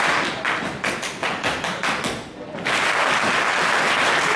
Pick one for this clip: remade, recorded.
recorded